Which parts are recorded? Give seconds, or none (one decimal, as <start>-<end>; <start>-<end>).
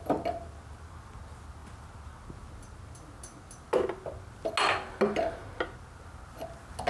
0.0-6.9